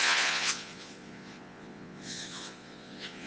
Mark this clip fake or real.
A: fake